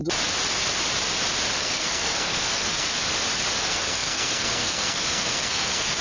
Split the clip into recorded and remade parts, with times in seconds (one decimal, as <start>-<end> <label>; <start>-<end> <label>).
0.0-1.6 recorded; 1.6-3.0 remade; 3.0-3.6 recorded; 3.6-6.0 remade